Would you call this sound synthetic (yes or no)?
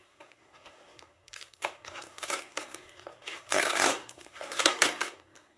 yes